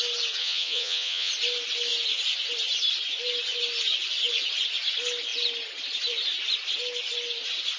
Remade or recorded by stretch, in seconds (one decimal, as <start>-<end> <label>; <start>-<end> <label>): 0.0-0.4 recorded; 0.4-1.3 remade; 1.3-7.8 recorded